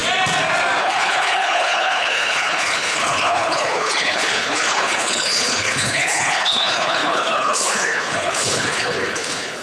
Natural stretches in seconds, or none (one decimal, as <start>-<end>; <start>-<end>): 0.0-0.8